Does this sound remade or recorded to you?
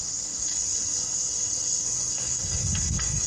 remade